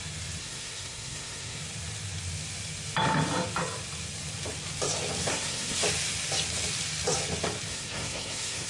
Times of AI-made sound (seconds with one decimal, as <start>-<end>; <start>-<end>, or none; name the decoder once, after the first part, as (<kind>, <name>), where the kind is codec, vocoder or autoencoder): 0.4-1.6 (codec, SNAC); 5.3-5.8; 7.7-8.7